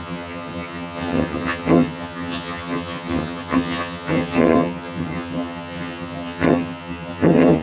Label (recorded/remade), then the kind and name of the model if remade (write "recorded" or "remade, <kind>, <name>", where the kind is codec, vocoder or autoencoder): remade, vocoder, HiFi-GAN